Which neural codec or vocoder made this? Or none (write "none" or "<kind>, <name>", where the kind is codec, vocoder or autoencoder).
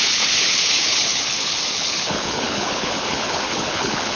codec, HILCodec